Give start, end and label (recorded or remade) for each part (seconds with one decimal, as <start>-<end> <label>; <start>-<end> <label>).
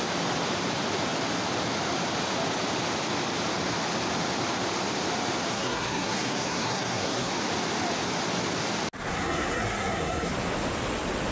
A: 0.0-5.5 recorded; 5.5-7.3 remade; 7.3-9.1 recorded; 9.1-10.3 remade; 10.3-11.3 recorded